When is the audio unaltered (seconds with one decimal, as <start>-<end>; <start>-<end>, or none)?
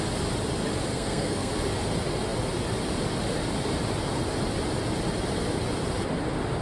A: 0.0-0.9; 1.5-6.6